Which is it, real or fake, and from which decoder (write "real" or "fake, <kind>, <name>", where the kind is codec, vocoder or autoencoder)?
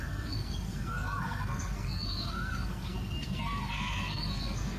fake, codec, SNAC